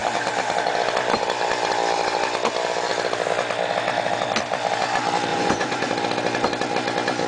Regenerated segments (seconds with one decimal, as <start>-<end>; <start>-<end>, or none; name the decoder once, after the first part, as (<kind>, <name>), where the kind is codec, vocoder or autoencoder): 5.3-5.9 (vocoder, Vocos)